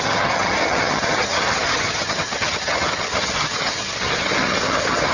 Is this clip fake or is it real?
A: fake